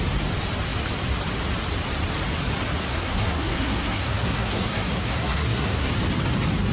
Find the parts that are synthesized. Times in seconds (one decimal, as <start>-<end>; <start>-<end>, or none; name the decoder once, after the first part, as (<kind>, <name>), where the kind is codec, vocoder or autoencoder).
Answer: 2.8-5.9 (codec, SNAC)